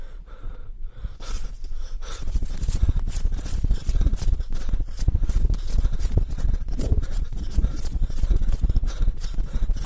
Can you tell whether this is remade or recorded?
remade